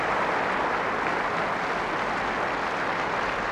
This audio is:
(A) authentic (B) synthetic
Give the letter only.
A